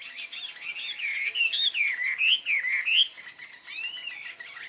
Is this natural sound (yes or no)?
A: yes